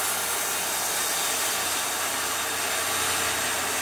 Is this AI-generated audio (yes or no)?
no